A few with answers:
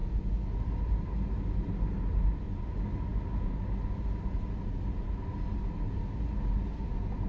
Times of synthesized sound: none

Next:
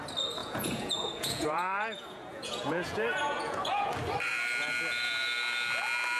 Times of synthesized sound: 0.4-3.9 (vocoder, Vocos)

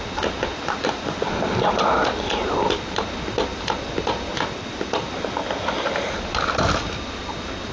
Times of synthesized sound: 0.5-1.3 (vocoder, BigVGAN v2); 4.3-6.1

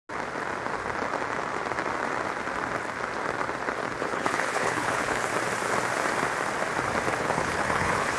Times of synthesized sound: 4.0-5.3 (codec, HILCodec); 7.2-8.2

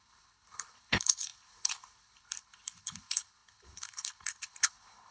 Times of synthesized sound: 0.0-5.1 (codec, HILCodec)

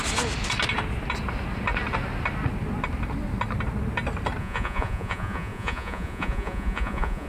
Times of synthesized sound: 4.4-7.3 (vocoder, Vocos)

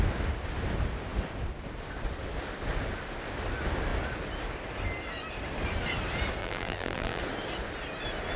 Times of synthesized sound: 6.4-7.2 (vocoder, BigVGAN v2)

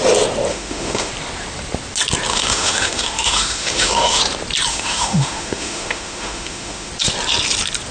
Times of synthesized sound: 0.5-1.1 (autoencoder, DAC-VAE); 2.3-4.2; 4.7-6.9